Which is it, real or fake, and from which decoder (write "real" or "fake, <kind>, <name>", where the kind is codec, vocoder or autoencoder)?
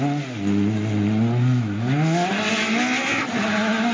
real